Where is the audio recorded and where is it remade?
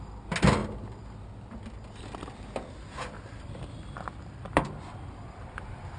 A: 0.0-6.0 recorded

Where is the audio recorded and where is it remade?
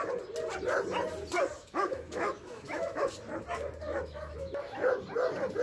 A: 0.0-1.6 recorded; 1.6-3.0 remade; 3.0-3.9 recorded; 3.9-4.9 remade; 4.9-5.6 recorded